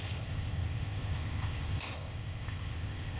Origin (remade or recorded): remade